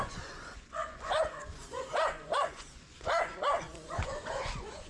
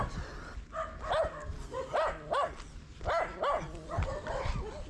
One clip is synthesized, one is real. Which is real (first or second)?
second